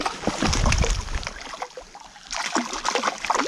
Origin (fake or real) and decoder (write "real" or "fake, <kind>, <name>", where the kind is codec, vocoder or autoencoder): real